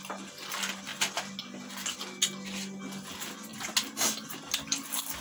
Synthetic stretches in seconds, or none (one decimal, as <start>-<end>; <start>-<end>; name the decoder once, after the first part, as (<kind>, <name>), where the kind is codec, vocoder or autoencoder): none